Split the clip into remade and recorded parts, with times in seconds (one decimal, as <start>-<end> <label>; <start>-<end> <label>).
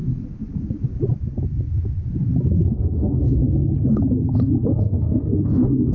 0.0-2.7 recorded; 2.7-3.4 remade; 3.4-4.7 recorded; 4.7-5.9 remade